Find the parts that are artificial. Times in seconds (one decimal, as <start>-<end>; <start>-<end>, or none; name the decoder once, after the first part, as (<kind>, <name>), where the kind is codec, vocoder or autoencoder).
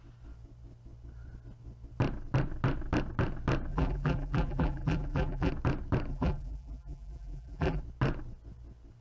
3.7-5.5 (vocoder, BigVGAN v2); 6.1-7.8